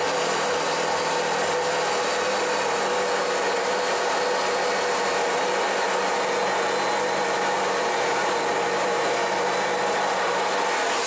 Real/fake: real